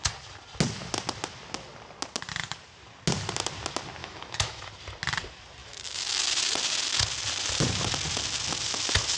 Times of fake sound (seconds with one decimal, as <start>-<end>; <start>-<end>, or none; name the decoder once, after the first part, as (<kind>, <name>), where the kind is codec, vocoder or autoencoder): 4.0-4.6 (autoencoder, DAC-VAE); 5.6-6.2